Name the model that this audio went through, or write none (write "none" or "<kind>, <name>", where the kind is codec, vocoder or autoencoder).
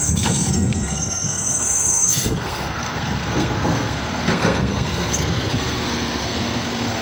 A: codec, SNAC